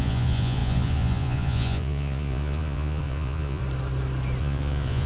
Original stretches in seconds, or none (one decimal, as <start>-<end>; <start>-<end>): 3.6-4.4